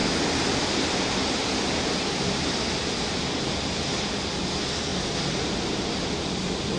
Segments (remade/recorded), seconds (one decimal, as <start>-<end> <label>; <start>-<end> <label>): 0.0-6.8 recorded